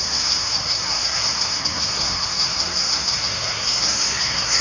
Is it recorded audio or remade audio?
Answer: remade